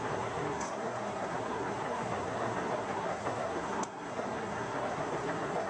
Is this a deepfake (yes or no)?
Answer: yes